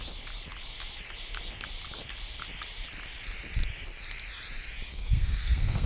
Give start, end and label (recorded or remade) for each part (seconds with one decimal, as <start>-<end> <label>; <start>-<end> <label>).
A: 0.0-4.9 recorded; 4.9-5.9 remade